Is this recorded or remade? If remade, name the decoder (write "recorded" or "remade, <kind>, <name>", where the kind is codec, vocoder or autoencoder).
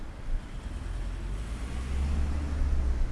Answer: recorded